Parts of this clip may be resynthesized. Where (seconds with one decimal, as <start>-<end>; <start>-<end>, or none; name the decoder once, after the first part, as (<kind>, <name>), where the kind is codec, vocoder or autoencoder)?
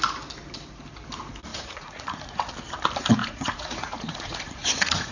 1.5-2.5 (vocoder, Vocos); 3.2-5.1